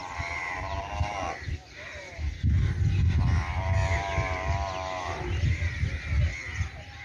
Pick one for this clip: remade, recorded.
recorded